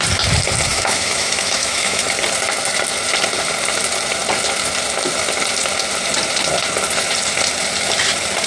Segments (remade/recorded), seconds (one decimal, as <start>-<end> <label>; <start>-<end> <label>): 0.0-0.7 recorded; 0.7-2.0 remade; 2.0-8.5 recorded